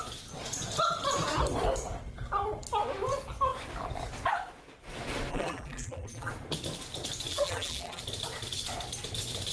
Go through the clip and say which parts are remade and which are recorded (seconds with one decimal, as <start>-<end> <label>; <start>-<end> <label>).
0.0-5.3 recorded; 5.3-6.3 remade; 6.3-7.3 recorded; 7.3-8.0 remade; 8.0-9.5 recorded